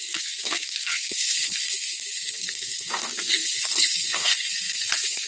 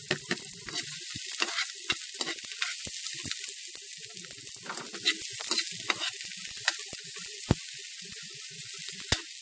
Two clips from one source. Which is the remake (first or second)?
first